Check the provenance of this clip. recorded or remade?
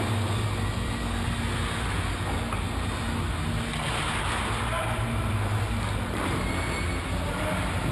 recorded